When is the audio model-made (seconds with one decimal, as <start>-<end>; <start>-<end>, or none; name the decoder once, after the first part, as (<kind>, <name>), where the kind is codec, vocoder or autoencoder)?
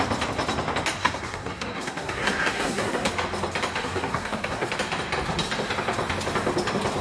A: 1.0-3.1 (codec, SNAC); 3.8-4.7